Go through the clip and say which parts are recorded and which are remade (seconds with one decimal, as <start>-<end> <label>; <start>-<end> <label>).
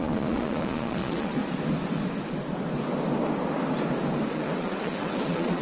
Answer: 0.0-1.4 remade; 1.4-4.3 recorded; 4.3-5.6 remade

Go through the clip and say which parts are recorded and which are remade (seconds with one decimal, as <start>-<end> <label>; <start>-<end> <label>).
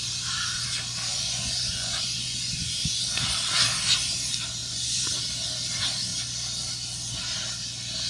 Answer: 0.0-1.1 recorded; 1.1-3.4 remade; 3.4-4.6 recorded; 4.6-5.2 remade; 5.2-8.1 recorded